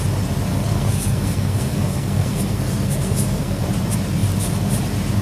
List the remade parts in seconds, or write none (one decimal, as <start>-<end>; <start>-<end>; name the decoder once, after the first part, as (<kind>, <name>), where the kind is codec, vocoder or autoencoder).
0.5-3.6 (codec, SNAC)